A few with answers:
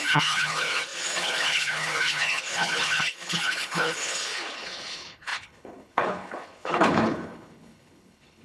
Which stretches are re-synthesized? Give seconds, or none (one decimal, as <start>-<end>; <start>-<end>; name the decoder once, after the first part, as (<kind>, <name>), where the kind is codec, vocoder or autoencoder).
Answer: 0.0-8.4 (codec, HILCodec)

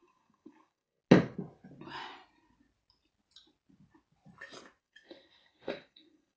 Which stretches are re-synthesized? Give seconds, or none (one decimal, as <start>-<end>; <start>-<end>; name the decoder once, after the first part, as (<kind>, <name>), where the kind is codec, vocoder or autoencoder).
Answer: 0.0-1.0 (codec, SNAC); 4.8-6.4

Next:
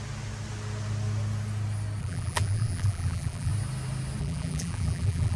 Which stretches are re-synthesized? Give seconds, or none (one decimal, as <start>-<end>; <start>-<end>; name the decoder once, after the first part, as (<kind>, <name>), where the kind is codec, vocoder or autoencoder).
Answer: 2.0-3.5 (vocoder, BigVGAN v2); 4.2-5.4

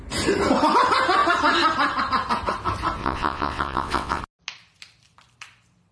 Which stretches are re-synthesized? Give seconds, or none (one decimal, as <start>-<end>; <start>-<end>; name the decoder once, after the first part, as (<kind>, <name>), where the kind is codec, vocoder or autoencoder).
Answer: 3.0-4.2 (vocoder, WaveNeXt)

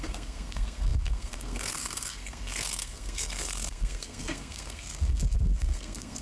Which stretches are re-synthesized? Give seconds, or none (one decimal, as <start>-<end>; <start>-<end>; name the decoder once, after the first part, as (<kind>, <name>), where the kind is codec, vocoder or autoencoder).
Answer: 0.0-6.2 (codec, SNAC)